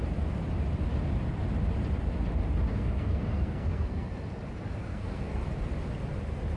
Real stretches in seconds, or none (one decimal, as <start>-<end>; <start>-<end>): 0.0-2.7; 4.1-4.9; 5.4-6.6